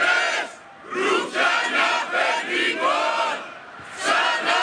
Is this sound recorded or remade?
recorded